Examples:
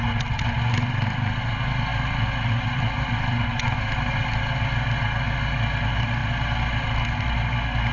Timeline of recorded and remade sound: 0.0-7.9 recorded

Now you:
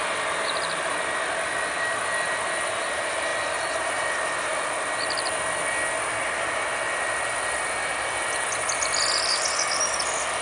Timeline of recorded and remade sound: 0.0-10.4 recorded

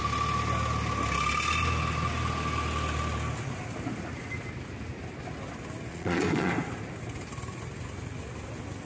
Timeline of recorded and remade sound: 0.0-5.9 recorded; 5.9-6.5 remade; 6.5-8.9 recorded

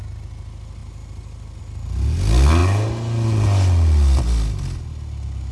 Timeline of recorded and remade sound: 0.0-5.5 recorded

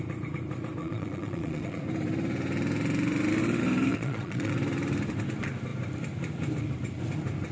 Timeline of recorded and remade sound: 0.0-0.8 recorded; 0.8-1.8 remade; 1.8-3.9 recorded; 3.9-4.5 remade; 4.5-7.5 recorded